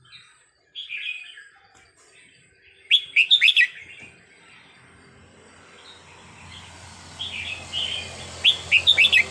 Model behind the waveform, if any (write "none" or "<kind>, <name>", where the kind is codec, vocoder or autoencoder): none